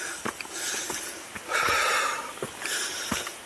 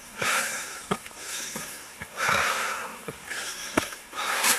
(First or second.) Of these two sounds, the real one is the first